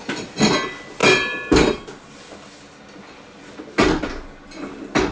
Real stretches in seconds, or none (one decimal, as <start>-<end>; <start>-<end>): 0.0-5.1